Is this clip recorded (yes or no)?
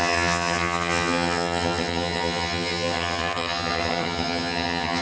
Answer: no